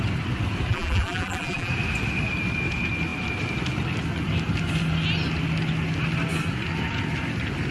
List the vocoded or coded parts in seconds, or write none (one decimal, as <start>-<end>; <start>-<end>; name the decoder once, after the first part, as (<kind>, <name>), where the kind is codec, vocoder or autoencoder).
0.7-1.7 (vocoder, BigVGAN v2)